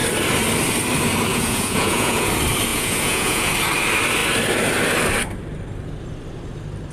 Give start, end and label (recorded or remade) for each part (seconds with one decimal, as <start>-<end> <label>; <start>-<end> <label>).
0.0-1.3 recorded; 1.3-2.3 remade; 2.3-2.7 recorded; 2.7-3.5 remade; 3.5-6.9 recorded